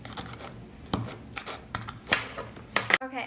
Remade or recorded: recorded